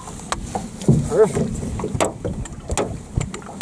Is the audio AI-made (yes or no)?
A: no